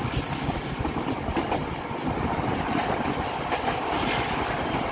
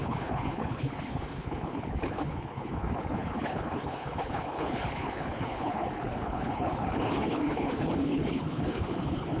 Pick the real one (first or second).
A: first